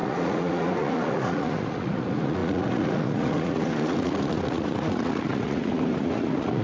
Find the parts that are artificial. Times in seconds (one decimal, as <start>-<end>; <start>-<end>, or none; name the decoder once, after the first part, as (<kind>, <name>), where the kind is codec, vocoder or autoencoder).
0.0-6.6 (vocoder, Vocos)